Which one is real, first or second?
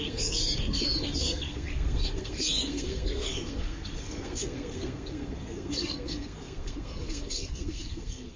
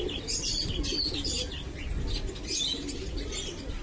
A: second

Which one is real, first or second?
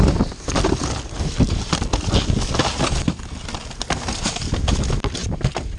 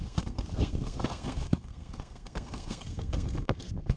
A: first